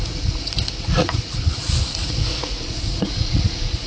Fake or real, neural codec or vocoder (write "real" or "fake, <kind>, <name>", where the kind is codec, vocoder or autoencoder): fake, vocoder, Vocos